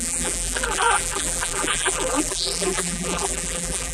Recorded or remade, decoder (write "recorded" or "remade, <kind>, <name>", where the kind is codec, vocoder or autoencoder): remade, vocoder, BigVGAN v2